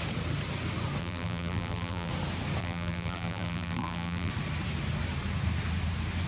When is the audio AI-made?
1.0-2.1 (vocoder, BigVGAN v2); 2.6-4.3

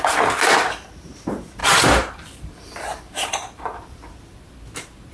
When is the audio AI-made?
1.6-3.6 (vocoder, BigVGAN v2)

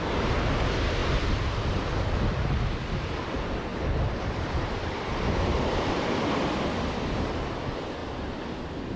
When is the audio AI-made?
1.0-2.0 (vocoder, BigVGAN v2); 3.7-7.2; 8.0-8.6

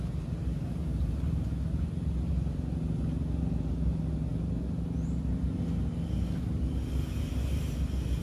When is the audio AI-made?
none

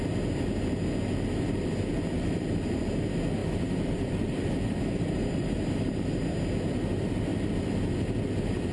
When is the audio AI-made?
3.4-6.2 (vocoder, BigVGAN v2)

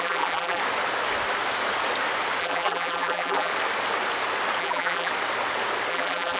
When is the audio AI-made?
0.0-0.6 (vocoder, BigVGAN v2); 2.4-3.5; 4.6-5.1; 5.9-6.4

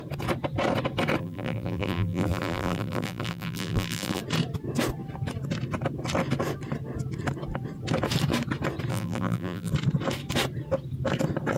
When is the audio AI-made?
1.2-4.2 (vocoder, BigVGAN v2); 8.9-9.7